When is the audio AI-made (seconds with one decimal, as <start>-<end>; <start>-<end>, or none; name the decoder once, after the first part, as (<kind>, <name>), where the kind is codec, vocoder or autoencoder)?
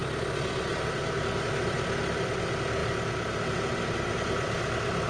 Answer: none